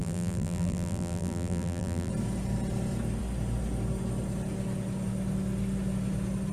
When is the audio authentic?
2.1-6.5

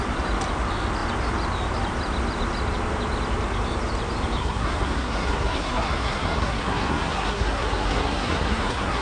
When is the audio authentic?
0.0-4.4

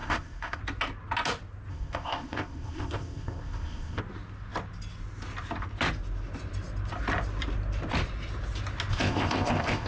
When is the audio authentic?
0.6-1.7; 4.0-8.9

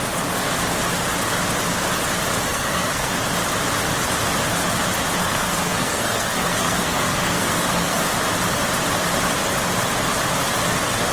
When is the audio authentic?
0.0-2.5; 3.1-5.2; 8.0-11.1

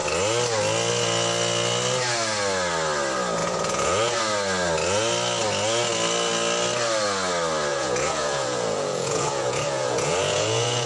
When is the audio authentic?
0.0-3.4; 4.2-7.7

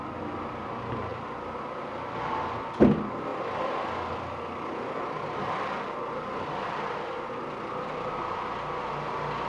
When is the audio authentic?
0.0-9.5

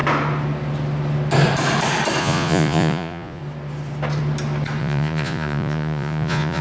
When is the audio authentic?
0.0-2.2; 3.4-4.8

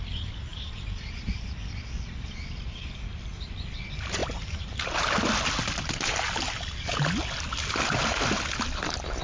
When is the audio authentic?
0.0-0.5; 1.4-4.2; 5.0-9.2